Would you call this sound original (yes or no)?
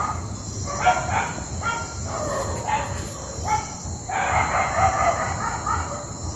yes